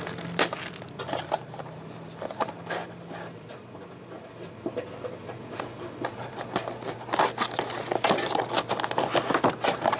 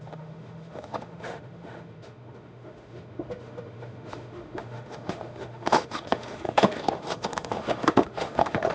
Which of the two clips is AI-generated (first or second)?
second